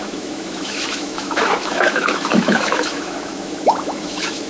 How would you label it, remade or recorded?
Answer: remade